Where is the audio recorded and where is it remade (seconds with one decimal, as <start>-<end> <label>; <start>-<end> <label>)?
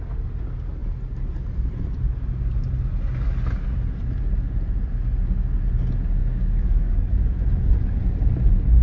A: 0.0-6.2 recorded; 6.2-7.4 remade; 7.4-8.8 recorded